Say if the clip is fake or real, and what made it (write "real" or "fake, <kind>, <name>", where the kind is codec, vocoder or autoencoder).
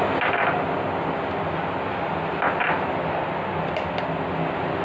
real